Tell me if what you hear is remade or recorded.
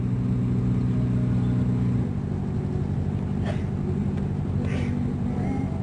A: recorded